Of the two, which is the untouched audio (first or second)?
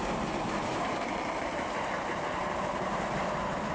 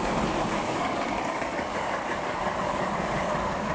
first